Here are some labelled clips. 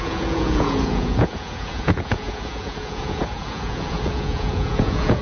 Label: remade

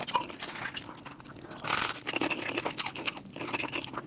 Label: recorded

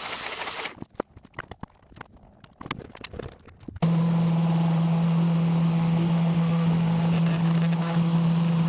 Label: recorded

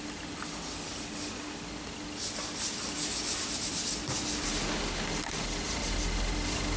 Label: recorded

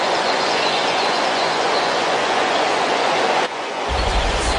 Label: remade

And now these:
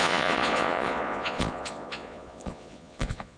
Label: remade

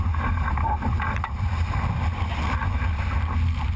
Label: recorded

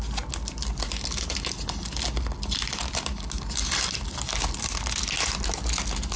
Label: recorded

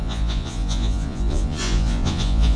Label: remade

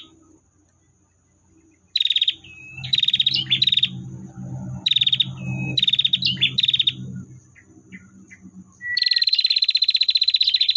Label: recorded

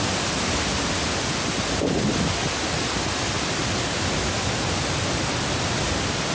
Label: recorded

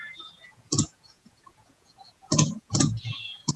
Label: remade